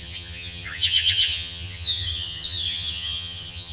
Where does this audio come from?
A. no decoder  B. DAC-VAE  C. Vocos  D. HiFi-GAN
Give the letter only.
D